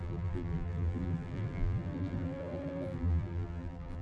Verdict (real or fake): fake